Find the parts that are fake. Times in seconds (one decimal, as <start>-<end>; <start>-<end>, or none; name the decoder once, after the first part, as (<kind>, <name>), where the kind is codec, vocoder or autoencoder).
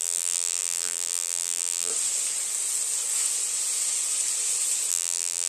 0.0-1.9 (vocoder, BigVGAN v2); 4.9-5.5